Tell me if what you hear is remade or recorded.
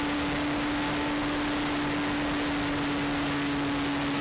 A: recorded